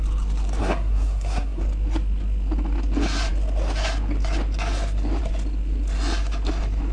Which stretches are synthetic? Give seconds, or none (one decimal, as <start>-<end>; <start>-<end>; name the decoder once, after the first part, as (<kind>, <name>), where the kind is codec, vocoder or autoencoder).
0.6-1.6 (codec, SNAC)